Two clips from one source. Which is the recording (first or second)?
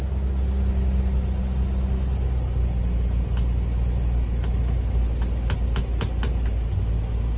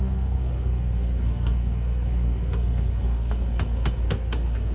first